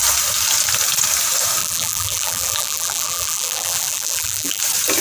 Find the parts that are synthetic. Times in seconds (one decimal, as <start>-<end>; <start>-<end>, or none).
1.6-4.6

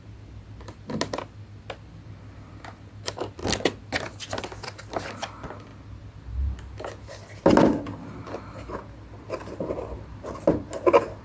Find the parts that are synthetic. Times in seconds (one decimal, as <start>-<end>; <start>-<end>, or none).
none

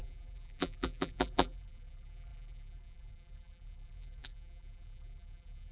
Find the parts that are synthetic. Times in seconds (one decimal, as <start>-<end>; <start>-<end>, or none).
0.0-5.7

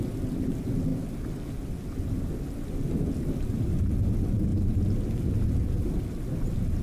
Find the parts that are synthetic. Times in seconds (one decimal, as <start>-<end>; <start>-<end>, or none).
none

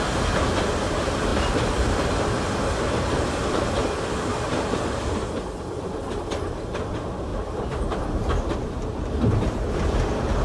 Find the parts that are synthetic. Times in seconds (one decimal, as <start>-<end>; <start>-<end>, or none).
1.3-2.3; 3.8-4.3; 7.3-8.0

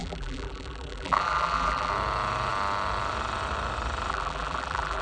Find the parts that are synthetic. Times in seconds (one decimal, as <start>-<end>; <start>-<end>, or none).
0.0-1.9; 4.1-5.0

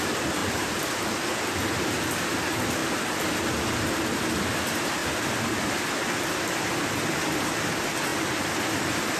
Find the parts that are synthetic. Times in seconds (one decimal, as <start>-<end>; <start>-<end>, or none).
0.4-0.9; 8.1-9.2